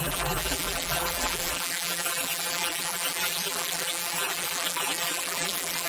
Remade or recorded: remade